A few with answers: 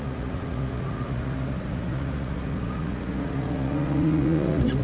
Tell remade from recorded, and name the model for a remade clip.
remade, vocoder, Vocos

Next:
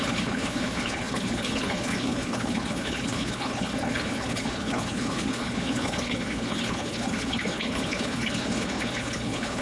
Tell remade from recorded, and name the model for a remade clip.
remade, codec, HILCodec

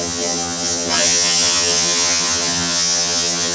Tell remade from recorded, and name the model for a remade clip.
remade, vocoder, HiFi-GAN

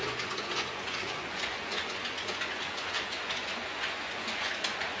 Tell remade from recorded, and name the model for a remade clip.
remade, vocoder, Vocos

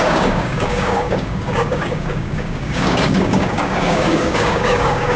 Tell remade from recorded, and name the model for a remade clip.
remade, codec, DAC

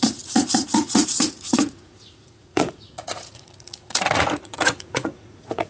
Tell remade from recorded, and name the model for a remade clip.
remade, vocoder, Vocos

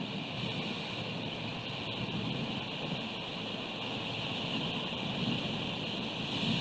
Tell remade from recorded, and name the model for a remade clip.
recorded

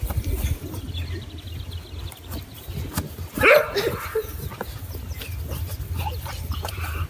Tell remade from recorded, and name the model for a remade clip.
recorded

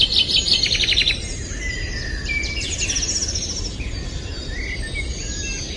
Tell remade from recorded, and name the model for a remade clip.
recorded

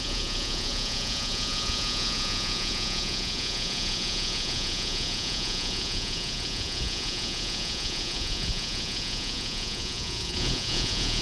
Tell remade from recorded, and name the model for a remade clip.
remade, vocoder, Vocos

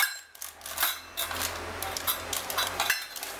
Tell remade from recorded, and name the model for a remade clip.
recorded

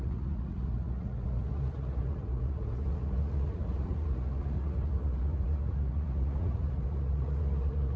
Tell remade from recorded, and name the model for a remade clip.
remade, vocoder, Vocos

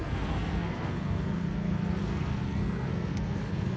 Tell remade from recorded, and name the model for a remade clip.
remade, codec, SNAC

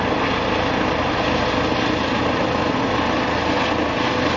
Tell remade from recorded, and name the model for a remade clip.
recorded